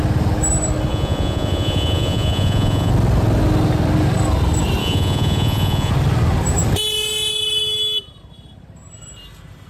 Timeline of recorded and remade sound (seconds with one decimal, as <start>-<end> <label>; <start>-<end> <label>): 0.0-0.9 recorded; 0.9-2.9 remade; 2.9-4.8 recorded; 4.8-5.9 remade; 5.9-9.7 recorded